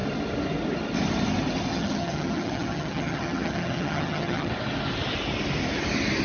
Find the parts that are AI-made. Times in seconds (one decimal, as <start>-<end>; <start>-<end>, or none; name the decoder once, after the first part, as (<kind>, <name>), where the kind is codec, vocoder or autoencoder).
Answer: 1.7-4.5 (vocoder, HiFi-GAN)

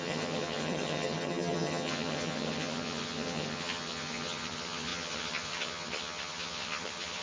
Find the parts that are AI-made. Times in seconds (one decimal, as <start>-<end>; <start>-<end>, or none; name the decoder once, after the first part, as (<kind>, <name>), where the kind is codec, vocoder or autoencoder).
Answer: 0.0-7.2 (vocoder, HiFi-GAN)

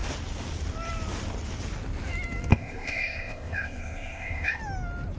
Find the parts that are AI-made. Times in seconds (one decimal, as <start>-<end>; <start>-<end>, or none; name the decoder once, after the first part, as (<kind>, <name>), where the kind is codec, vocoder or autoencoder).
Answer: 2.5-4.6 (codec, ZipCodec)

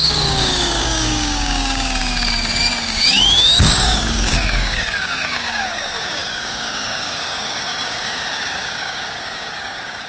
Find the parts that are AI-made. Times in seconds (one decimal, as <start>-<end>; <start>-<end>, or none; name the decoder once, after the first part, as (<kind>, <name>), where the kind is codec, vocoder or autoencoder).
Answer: 0.0-10.1 (codec, DAC)

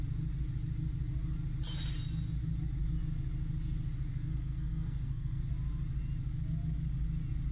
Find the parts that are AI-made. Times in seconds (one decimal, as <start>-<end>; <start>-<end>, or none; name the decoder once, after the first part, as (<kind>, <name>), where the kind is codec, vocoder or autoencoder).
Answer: 4.3-5.4 (codec, SNAC)

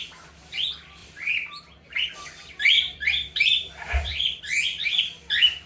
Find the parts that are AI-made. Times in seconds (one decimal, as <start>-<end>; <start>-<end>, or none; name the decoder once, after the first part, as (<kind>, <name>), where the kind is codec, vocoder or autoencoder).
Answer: 1.0-4.4 (vocoder, BigVGAN v2)

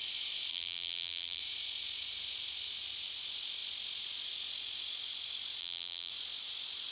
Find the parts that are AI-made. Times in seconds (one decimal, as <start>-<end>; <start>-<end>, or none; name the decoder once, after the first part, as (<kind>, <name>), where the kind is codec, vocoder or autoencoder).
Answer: 0.5-1.4 (vocoder, BigVGAN v2); 5.6-6.1